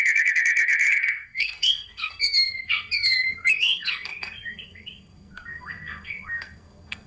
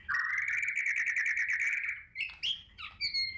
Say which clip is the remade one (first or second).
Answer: first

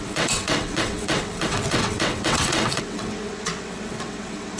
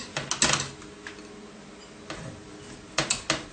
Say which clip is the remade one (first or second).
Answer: first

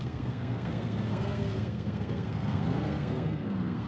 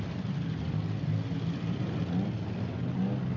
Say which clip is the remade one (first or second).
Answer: first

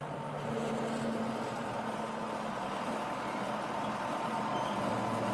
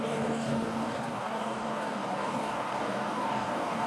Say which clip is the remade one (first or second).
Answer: second